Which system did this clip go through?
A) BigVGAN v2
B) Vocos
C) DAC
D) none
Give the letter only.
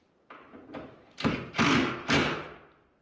D